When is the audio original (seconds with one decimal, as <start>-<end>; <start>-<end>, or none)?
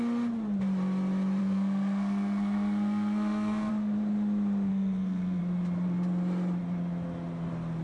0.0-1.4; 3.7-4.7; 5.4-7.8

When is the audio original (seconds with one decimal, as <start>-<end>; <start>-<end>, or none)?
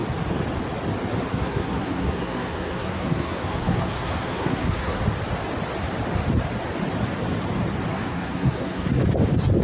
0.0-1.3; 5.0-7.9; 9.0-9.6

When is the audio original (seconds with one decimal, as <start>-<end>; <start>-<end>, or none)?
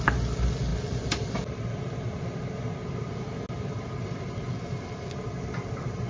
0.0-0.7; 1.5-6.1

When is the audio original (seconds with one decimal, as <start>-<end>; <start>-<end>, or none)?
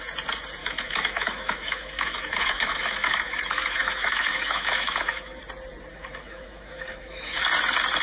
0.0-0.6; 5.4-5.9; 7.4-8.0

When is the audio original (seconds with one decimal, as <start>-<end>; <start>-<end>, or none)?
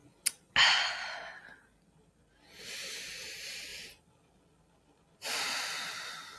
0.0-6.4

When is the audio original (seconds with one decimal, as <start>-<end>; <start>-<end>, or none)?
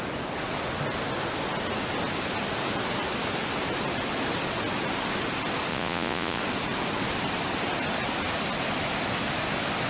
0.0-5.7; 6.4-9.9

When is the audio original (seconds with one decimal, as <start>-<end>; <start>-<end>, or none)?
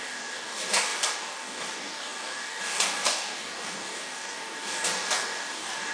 none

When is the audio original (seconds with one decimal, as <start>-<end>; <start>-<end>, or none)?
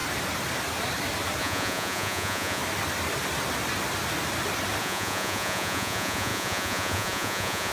0.0-1.4; 2.6-4.8